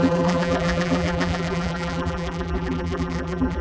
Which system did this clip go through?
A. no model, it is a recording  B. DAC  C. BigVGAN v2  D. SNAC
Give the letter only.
C